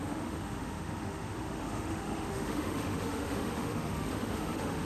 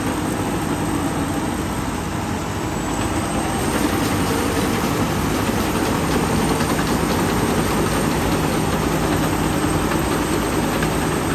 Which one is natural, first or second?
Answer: second